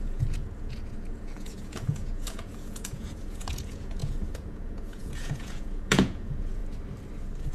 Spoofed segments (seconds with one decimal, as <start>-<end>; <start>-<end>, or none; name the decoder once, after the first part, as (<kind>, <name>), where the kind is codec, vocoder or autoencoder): 0.0-6.6 (vocoder, Vocos)